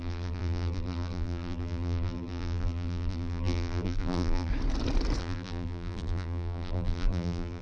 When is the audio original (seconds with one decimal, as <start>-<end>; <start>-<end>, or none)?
4.5-5.2